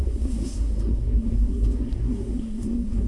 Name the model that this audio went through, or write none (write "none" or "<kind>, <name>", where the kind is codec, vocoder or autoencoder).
codec, SNAC